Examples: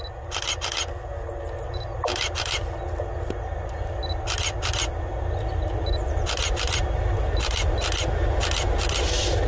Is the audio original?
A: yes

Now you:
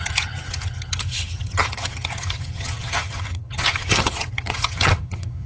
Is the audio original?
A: no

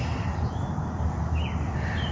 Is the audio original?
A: yes